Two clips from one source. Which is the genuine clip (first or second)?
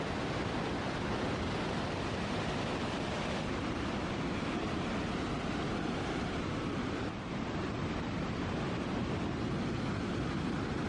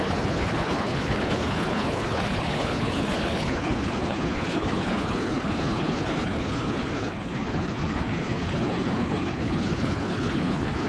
first